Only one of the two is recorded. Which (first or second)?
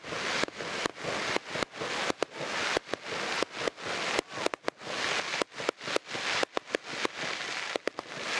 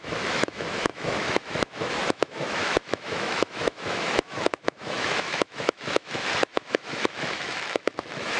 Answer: first